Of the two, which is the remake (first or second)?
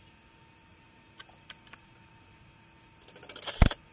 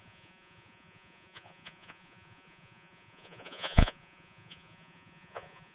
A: second